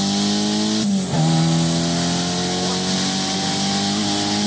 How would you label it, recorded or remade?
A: recorded